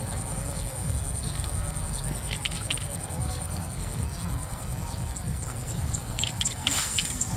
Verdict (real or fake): fake